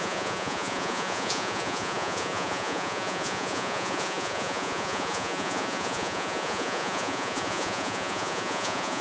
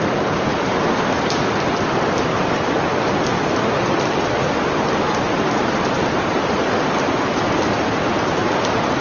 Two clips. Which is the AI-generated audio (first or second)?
first